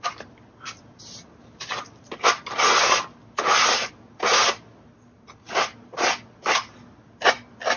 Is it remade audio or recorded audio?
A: recorded